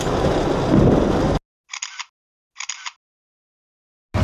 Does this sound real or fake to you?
real